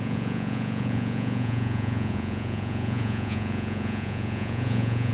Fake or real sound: fake